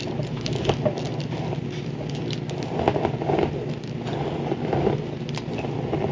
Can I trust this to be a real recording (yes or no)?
yes